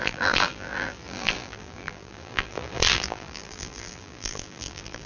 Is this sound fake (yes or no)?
yes